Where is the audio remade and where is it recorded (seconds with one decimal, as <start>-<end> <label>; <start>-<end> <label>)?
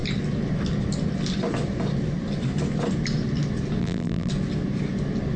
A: 0.0-3.8 recorded; 3.8-4.3 remade; 4.3-5.4 recorded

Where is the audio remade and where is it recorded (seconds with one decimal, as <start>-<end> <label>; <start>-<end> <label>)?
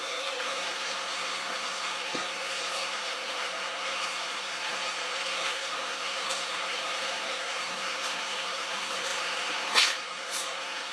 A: 0.0-10.9 remade